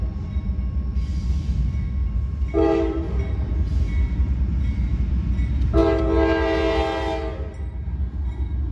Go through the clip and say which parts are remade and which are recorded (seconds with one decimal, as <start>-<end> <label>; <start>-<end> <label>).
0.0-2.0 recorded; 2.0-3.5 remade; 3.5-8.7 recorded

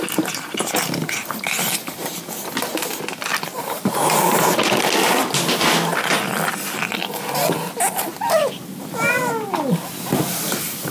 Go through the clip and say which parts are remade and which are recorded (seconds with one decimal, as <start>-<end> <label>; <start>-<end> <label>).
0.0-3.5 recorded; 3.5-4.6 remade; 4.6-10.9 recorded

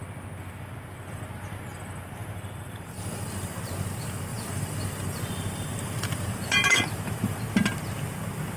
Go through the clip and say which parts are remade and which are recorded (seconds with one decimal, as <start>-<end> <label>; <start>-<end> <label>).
0.0-2.2 recorded; 2.2-3.5 remade; 3.5-4.3 recorded; 4.3-7.4 remade; 7.4-8.6 recorded

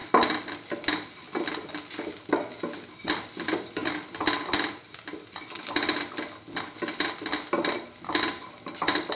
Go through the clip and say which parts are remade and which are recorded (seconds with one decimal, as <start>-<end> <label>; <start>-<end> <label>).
0.0-3.0 recorded; 3.0-3.8 remade; 3.8-8.3 recorded; 8.3-9.2 remade

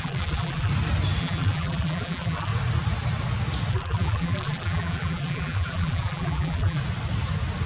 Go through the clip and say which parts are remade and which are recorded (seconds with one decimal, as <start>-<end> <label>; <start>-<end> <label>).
0.0-0.7 remade; 0.7-1.2 recorded; 1.2-2.5 remade; 2.5-3.7 recorded; 3.7-6.8 remade; 6.8-7.7 recorded

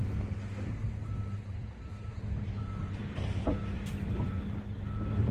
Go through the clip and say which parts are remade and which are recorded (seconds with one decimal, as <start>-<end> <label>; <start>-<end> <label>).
0.0-1.0 recorded; 1.0-4.2 remade; 4.2-5.3 recorded